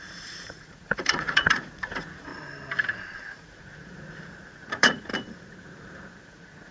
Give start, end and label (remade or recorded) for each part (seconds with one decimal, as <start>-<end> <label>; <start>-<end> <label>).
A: 0.0-2.3 remade; 2.3-3.2 recorded; 3.2-5.1 remade; 5.1-6.2 recorded; 6.2-6.7 remade